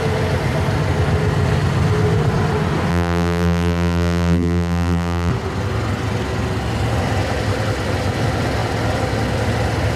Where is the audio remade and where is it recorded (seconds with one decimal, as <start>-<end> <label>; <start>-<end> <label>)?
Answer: 0.0-2.9 recorded; 2.9-5.3 remade; 5.3-10.0 recorded